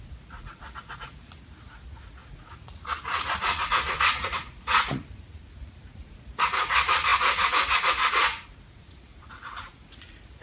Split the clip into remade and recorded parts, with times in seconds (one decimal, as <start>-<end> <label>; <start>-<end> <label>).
0.0-10.4 remade